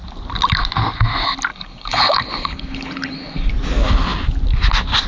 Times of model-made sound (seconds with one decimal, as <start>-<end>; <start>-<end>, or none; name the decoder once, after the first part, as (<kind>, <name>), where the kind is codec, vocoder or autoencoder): 1.5-3.5 (codec, HILCodec)

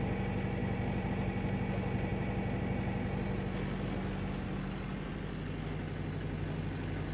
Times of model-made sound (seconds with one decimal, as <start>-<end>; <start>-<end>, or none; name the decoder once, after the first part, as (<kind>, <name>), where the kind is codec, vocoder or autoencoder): none

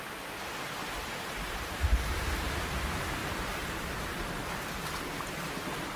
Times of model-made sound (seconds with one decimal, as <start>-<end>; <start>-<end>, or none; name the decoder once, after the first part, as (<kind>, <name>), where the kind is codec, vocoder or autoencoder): 0.8-2.2 (vocoder, BigVGAN v2); 3.2-3.8

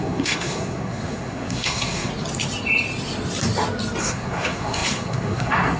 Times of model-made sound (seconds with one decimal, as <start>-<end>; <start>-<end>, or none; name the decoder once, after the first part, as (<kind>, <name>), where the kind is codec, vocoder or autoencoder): 0.0-2.1 (codec, SNAC); 4.0-5.8

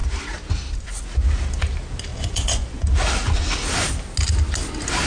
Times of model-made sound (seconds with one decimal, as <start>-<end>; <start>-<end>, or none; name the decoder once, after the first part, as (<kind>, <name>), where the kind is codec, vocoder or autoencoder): 2.1-2.8 (vocoder, Vocos)